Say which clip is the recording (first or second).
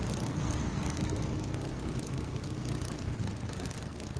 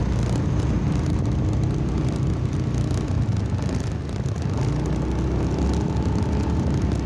second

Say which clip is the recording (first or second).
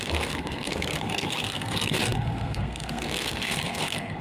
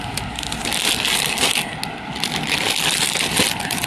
second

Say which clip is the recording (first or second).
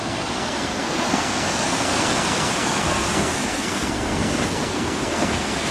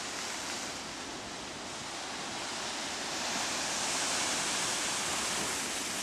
second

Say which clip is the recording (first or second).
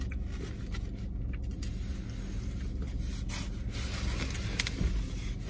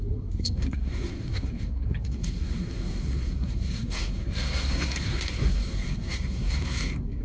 first